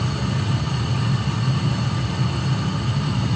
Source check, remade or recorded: recorded